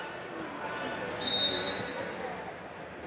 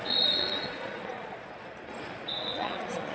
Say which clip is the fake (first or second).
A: second